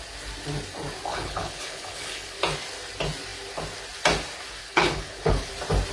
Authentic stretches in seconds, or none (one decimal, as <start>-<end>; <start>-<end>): 0.0-1.1; 2.4-4.6; 5.5-5.9